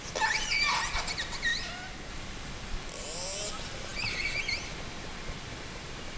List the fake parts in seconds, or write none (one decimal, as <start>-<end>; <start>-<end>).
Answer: 0.0-1.5; 2.1-3.9; 4.7-6.2